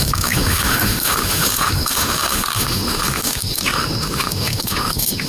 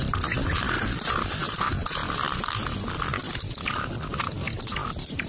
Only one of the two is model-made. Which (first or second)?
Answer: first